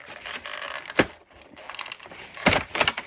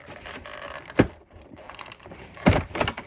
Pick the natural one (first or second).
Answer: first